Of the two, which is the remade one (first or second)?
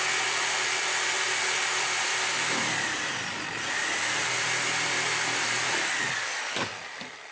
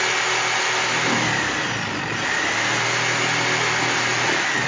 first